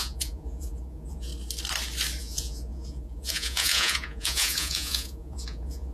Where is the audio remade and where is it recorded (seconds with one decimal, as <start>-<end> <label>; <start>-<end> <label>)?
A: 0.0-1.3 remade; 1.3-2.2 recorded; 2.2-5.9 remade